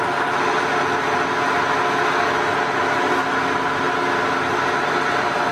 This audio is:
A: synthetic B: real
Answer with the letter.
B